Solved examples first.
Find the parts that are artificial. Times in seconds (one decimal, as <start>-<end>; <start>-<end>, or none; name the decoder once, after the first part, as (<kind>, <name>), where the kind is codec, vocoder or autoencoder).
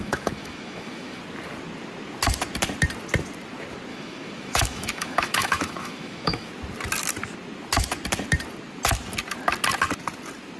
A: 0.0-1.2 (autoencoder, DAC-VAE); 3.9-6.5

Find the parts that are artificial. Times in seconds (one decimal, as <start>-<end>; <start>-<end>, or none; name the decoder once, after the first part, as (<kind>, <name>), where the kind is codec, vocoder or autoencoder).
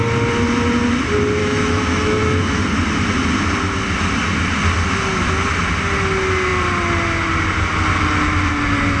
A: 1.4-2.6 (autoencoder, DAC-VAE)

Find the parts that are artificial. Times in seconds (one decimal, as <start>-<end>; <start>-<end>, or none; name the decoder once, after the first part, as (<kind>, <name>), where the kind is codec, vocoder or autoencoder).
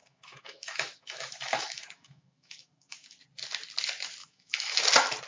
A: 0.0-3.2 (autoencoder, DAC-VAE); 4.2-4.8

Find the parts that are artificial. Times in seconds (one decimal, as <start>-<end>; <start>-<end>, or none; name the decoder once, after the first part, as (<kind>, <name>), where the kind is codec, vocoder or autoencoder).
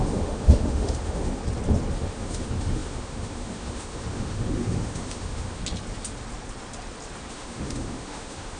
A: 0.0-1.4 (autoencoder, DAC-VAE); 1.9-5.6; 7.3-8.6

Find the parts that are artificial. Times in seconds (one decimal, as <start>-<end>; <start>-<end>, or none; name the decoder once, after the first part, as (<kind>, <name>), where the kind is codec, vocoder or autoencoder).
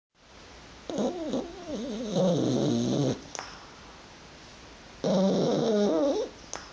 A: 1.7-2.2 (autoencoder, DAC-VAE)